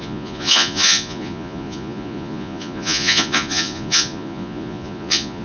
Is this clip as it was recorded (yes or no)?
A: no